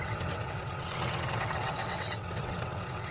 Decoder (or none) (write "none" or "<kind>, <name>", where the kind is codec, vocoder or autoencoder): vocoder, WaveNeXt